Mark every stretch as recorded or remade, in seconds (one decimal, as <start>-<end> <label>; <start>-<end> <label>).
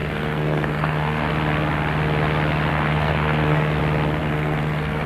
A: 0.0-1.3 remade; 1.3-2.7 recorded; 2.7-3.8 remade; 3.8-4.2 recorded; 4.2-5.1 remade